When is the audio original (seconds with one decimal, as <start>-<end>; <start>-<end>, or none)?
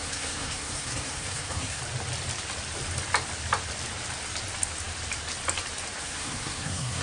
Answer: 1.8-6.0